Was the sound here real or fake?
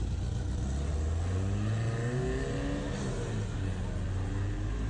real